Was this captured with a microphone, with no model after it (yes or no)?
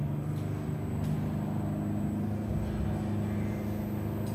yes